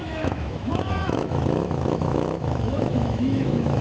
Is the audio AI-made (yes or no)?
yes